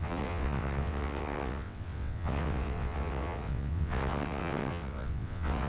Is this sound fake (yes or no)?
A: yes